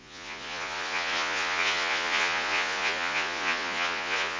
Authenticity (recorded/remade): remade